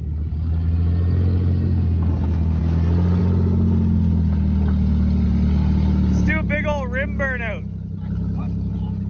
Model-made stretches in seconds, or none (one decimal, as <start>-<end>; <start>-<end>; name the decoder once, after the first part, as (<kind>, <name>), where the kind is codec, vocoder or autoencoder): none